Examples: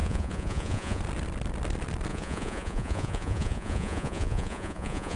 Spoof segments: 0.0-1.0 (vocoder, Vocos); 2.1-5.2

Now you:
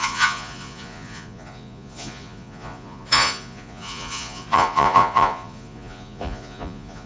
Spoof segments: 0.0-7.1 (vocoder, Vocos)

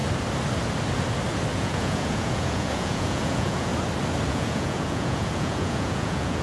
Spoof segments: 1.5-3.7 (vocoder, Vocos); 4.3-6.4

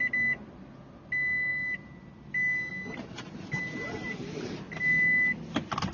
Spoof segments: none

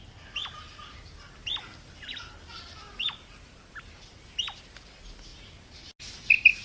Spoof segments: none

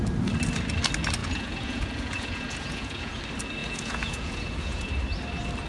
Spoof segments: 1.2-3.2 (vocoder, Vocos); 3.6-4.9